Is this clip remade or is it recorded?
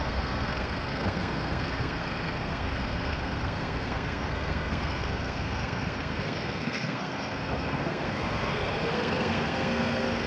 remade